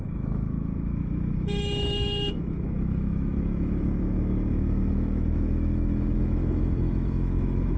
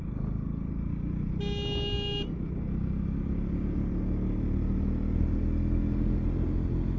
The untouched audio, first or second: second